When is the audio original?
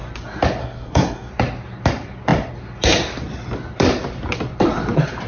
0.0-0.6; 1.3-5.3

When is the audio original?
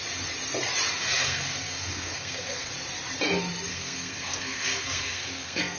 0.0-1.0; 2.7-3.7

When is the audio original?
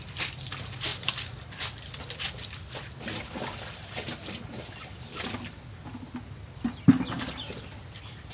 0.0-8.3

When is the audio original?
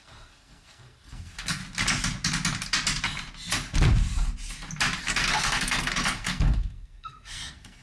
1.6-5.0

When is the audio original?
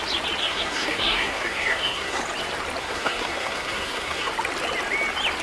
0.0-0.4; 2.2-2.8; 4.3-5.4